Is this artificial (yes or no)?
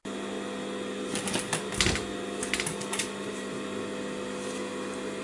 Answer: no